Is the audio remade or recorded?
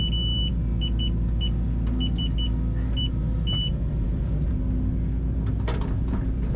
recorded